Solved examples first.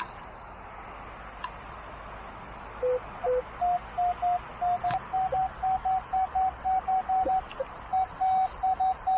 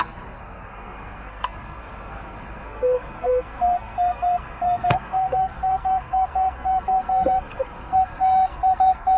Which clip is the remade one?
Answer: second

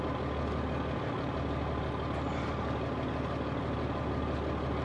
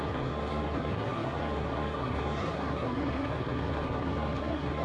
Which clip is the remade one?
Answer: second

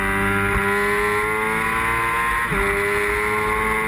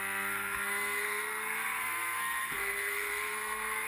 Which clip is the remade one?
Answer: second